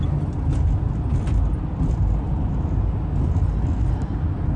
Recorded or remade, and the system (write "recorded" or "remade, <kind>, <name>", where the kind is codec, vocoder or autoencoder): recorded